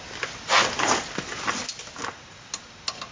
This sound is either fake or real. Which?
real